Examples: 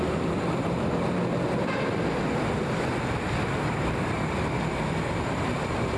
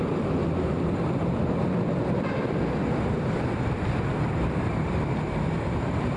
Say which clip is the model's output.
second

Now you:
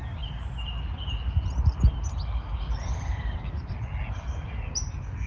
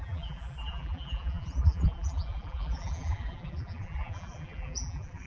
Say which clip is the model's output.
second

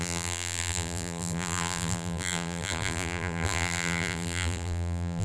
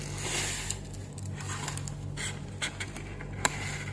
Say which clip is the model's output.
first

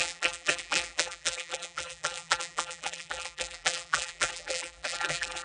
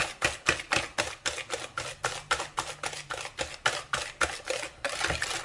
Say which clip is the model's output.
first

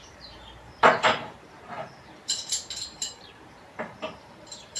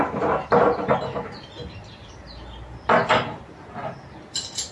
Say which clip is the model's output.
first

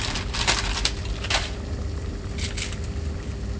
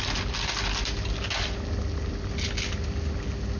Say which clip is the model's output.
first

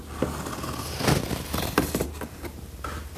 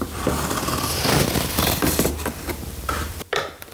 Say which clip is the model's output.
second